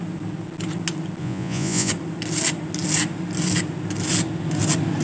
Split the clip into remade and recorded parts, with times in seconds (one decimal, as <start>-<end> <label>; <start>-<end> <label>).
0.0-1.2 recorded; 1.2-1.9 remade; 1.9-5.0 recorded